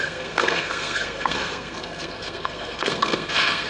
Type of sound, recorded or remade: remade